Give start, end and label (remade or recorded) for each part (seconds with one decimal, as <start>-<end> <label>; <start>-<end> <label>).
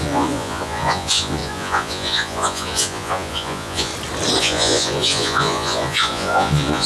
0.0-3.9 remade; 3.9-4.4 recorded; 4.4-6.9 remade